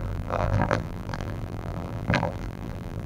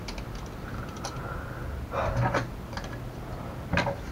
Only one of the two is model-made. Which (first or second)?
first